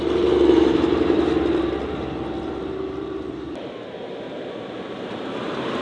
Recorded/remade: remade